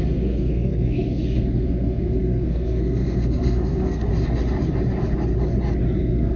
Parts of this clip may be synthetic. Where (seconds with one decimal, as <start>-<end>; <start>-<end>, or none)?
0.0-4.1; 6.0-6.4